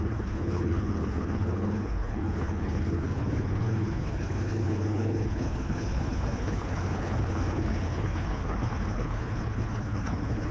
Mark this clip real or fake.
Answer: fake